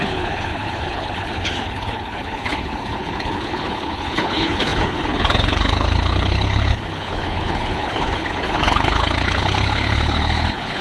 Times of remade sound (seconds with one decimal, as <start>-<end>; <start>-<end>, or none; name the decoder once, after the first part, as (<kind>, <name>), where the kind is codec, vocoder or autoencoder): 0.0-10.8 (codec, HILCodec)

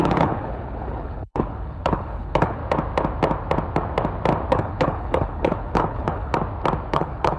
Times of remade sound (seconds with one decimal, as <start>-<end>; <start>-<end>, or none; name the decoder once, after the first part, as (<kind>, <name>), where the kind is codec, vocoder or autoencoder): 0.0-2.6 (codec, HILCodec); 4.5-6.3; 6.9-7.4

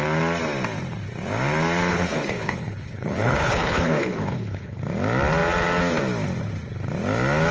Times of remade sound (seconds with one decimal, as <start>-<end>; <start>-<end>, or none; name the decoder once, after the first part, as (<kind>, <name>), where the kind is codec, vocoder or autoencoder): 1.9-4.8 (codec, HILCodec)

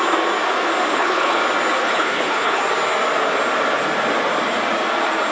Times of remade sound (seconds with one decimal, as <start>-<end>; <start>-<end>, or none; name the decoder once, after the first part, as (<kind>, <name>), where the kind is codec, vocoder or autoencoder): 0.9-1.4 (codec, HILCodec); 1.8-2.6

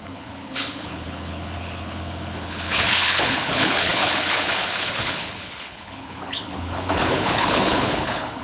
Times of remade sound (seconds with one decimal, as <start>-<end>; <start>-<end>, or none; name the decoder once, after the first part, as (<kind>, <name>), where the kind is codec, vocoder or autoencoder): 0.0-8.4 (codec, HILCodec)